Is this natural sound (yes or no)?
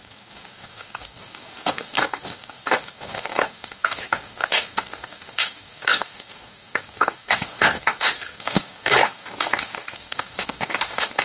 no